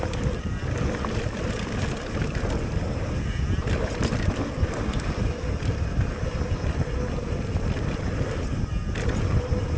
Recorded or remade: recorded